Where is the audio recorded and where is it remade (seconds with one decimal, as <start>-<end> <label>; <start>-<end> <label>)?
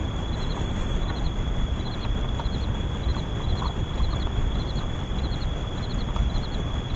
0.0-1.9 remade; 1.9-3.1 recorded; 3.1-5.9 remade; 5.9-7.0 recorded